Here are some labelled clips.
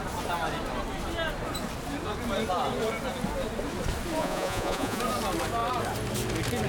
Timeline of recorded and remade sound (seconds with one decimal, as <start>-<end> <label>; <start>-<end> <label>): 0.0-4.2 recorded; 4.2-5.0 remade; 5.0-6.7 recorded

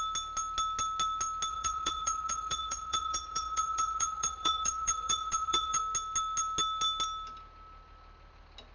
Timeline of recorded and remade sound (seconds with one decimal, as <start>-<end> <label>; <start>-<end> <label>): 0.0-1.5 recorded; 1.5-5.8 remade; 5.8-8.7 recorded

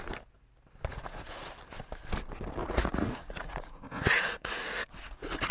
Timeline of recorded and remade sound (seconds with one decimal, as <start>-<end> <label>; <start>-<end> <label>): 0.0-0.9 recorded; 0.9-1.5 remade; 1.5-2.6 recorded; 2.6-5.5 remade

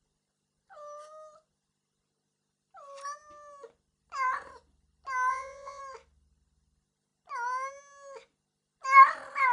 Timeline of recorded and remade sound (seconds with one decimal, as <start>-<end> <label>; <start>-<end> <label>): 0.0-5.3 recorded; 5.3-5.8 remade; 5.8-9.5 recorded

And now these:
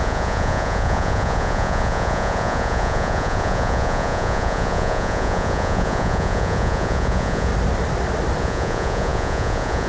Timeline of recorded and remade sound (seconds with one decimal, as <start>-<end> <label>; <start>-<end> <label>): 0.0-7.5 remade; 7.5-8.4 recorded; 8.4-9.9 remade

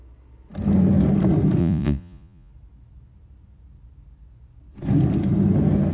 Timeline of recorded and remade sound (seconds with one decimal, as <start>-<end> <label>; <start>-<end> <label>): 0.0-1.6 recorded; 1.6-2.5 remade; 2.5-5.9 recorded

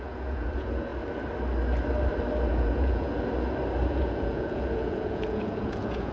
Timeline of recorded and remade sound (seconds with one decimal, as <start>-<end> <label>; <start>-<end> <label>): 0.0-0.9 remade; 0.9-2.5 recorded; 2.5-3.1 remade; 3.1-3.9 recorded; 3.9-6.1 remade